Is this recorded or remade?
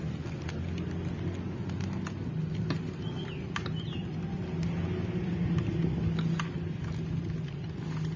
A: recorded